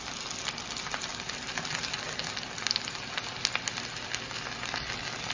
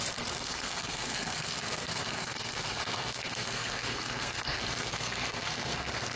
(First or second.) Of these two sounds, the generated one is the second